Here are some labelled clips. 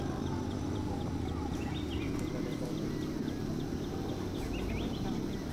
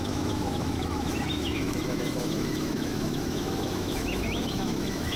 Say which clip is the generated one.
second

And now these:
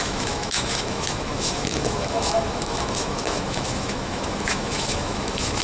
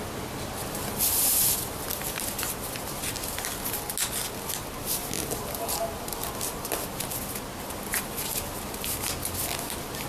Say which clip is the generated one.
first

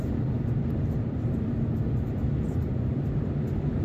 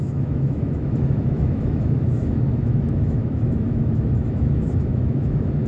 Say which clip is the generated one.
second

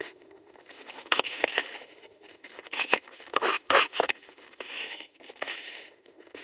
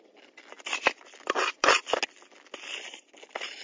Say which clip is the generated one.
first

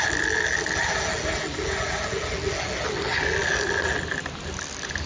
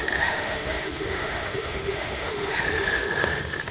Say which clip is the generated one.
second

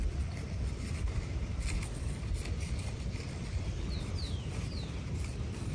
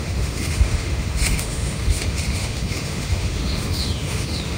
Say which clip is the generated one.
second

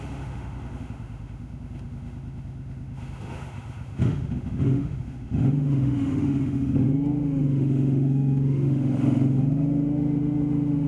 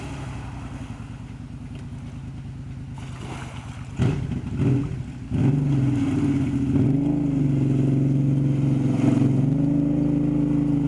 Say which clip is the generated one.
first